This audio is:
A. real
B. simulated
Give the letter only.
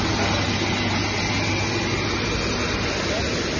A